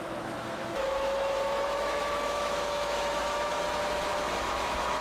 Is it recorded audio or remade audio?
remade